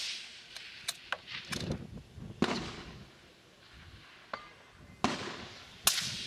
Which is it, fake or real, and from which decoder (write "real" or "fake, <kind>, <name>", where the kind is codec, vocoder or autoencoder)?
real